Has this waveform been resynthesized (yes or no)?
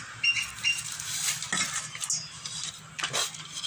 no